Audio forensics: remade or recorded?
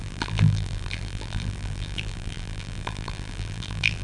remade